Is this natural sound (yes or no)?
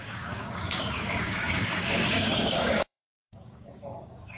no